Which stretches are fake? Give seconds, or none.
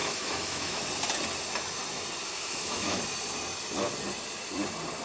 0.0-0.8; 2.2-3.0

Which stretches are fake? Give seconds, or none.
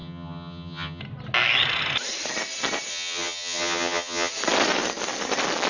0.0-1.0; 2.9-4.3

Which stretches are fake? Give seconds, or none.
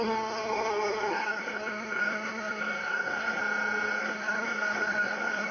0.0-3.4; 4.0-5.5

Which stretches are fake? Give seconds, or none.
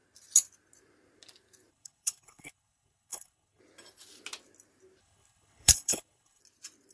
1.7-3.6; 5.0-6.4